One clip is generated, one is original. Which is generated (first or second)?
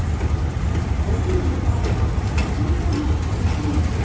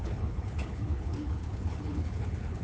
second